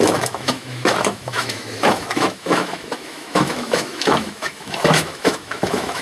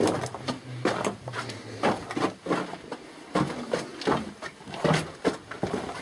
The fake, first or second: first